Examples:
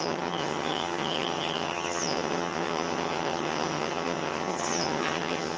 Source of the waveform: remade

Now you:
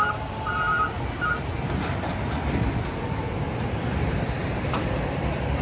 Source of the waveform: recorded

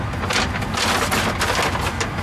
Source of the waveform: recorded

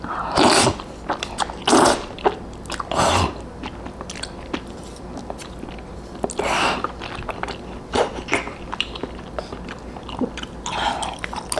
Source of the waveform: recorded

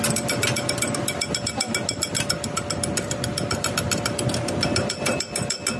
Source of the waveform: recorded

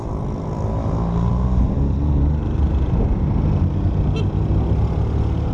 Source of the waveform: recorded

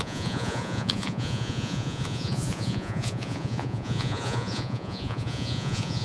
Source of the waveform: remade